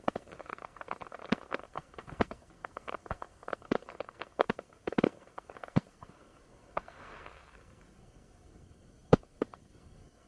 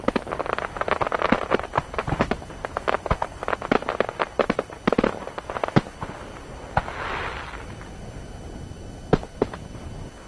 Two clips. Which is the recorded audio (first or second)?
second